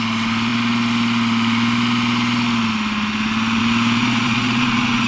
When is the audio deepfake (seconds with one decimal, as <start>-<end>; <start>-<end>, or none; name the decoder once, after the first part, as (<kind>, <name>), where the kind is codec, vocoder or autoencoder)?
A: 4.0-5.1 (vocoder, Vocos)